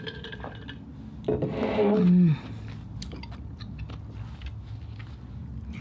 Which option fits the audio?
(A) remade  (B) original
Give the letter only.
B